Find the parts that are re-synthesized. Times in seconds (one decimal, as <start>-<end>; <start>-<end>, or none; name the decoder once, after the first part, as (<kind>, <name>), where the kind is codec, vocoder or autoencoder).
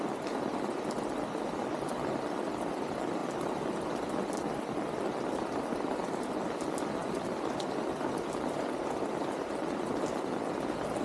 3.2-4.9 (vocoder, BigVGAN v2); 7.0-9.5